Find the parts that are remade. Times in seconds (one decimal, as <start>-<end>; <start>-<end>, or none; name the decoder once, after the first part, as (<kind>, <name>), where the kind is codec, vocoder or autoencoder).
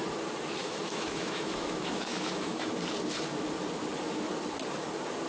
0.6-2.7 (autoencoder, DAC-VAE)